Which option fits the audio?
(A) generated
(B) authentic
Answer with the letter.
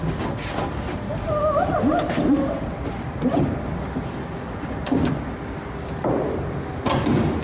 B